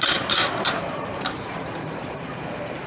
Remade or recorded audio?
remade